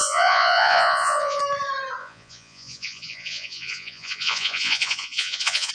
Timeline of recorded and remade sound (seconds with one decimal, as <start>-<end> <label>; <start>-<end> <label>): 0.0-1.4 remade; 1.4-2.0 recorded; 2.0-5.7 remade

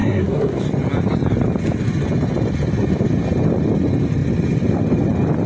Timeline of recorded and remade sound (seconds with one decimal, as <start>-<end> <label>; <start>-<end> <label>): 0.0-0.6 remade; 0.6-5.5 recorded

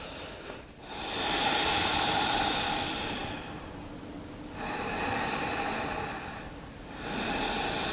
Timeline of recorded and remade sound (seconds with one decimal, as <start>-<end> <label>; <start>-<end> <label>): 0.0-3.2 remade; 3.2-7.9 recorded

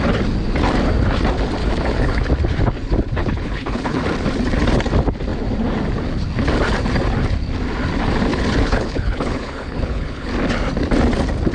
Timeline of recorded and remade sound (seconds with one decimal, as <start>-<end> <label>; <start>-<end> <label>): 0.0-1.6 recorded; 1.6-2.3 remade; 2.3-3.2 recorded; 3.2-4.0 remade; 4.0-8.3 recorded; 8.3-10.3 remade; 10.3-11.5 recorded